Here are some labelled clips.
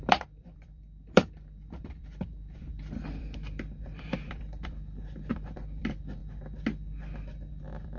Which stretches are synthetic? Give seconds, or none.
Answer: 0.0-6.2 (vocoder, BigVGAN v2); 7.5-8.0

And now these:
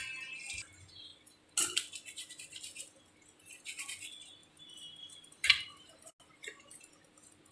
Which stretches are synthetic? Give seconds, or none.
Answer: 4.4-6.1 (vocoder, BigVGAN v2)